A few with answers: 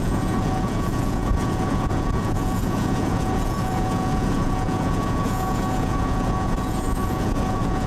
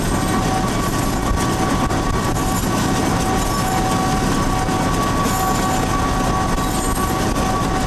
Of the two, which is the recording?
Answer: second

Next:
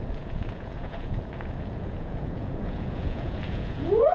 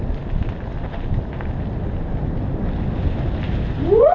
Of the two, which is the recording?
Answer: second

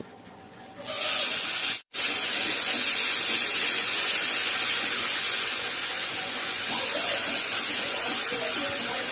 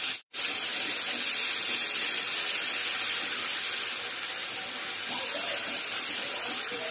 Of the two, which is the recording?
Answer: second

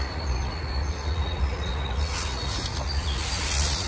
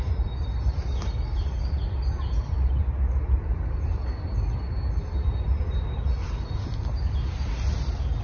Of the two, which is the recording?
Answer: second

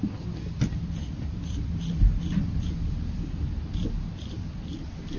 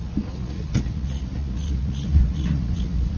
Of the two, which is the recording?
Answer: first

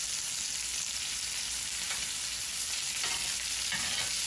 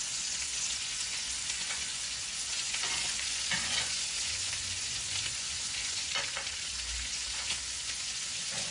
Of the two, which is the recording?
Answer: first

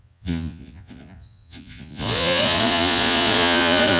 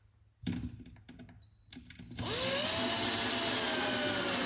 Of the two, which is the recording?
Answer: second